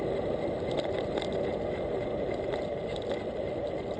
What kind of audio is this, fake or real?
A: real